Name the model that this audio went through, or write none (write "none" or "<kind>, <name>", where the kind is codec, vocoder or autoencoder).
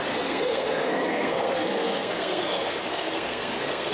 codec, SNAC